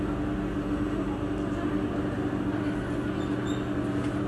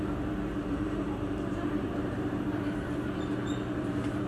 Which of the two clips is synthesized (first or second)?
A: second